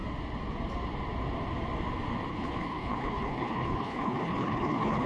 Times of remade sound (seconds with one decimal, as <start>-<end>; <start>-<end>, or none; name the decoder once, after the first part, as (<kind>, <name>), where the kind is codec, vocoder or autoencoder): 2.3-5.1 (codec, HILCodec)